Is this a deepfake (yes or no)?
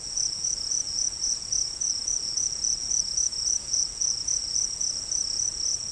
yes